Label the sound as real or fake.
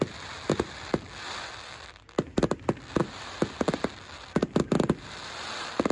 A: real